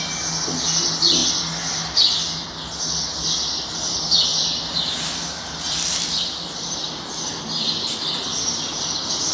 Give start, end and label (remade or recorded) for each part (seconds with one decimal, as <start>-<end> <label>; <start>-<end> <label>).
0.0-9.3 recorded